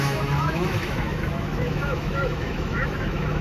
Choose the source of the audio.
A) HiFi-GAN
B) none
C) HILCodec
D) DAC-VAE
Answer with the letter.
D